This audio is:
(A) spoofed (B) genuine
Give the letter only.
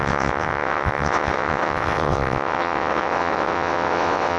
A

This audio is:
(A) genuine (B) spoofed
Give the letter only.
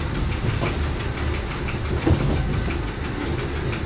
A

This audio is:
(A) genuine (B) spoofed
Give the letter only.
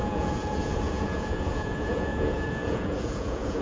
B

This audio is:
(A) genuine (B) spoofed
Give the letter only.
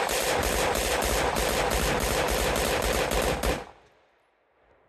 A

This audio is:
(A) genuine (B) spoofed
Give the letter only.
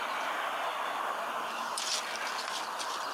A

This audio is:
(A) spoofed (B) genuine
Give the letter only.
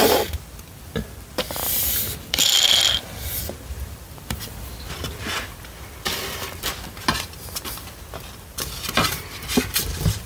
A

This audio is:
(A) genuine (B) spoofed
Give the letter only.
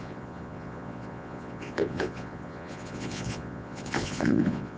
B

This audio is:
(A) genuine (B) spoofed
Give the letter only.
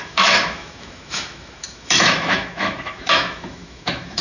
B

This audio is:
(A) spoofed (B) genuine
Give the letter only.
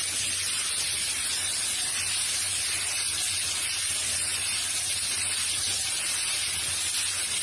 B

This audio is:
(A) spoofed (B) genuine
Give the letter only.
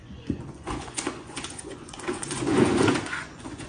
A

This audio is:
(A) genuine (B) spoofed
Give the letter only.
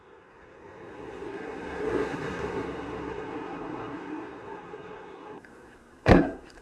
B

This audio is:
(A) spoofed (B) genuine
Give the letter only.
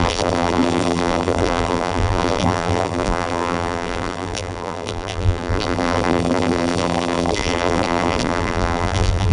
A